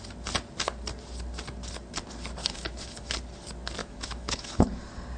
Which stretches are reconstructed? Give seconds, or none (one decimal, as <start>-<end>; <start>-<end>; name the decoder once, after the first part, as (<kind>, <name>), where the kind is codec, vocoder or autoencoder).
2.4-3.1 (autoencoder, DAC-VAE); 3.8-4.7